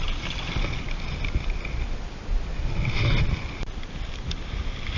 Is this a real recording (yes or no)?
yes